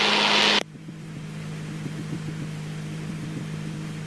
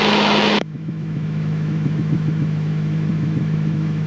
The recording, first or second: first